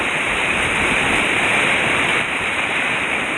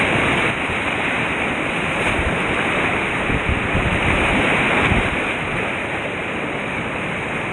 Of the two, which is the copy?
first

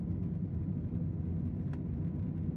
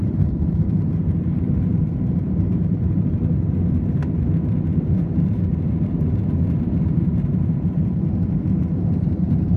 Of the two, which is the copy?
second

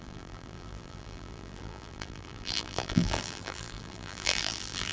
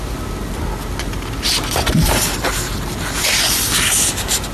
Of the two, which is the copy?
first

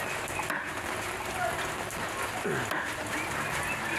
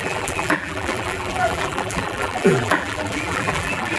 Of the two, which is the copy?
second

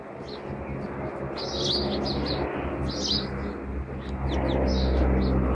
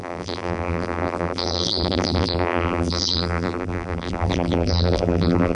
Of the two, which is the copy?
second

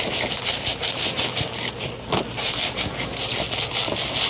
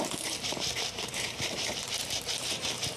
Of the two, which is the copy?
second